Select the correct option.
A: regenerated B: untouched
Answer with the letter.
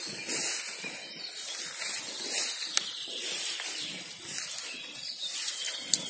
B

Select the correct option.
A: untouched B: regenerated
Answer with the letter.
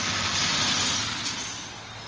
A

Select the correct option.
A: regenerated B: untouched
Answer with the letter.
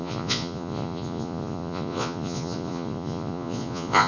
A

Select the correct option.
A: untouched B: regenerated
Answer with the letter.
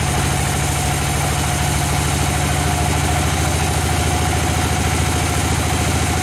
A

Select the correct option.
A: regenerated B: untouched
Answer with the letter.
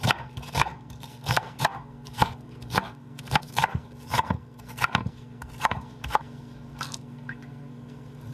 A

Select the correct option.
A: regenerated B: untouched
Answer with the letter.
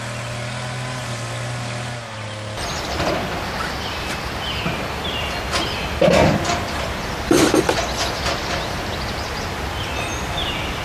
B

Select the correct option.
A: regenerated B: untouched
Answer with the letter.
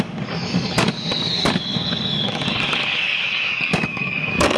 A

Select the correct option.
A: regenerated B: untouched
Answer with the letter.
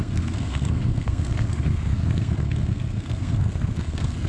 A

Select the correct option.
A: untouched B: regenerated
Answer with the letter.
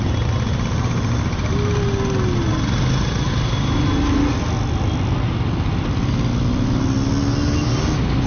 A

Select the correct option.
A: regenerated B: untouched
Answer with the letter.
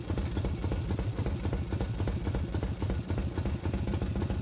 B